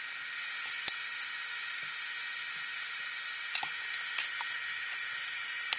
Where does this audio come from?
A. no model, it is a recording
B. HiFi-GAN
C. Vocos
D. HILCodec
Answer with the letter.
A